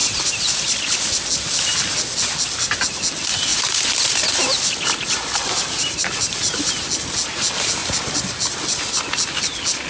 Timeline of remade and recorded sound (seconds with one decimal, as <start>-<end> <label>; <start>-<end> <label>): 0.0-1.3 remade; 1.3-3.5 recorded; 3.5-6.7 remade; 6.7-7.8 recorded; 7.8-9.0 remade; 9.0-9.9 recorded